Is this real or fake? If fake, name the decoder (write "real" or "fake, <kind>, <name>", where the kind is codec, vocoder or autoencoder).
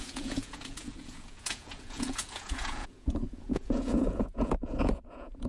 fake, vocoder, Vocos